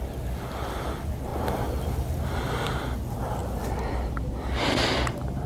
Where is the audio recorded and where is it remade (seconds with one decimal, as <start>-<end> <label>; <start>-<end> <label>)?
0.0-5.5 recorded